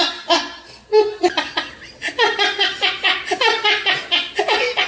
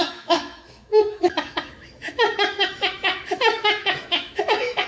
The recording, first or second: first